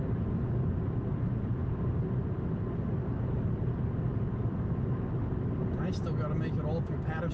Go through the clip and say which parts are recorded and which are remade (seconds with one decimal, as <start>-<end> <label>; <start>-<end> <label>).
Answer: 0.0-7.3 recorded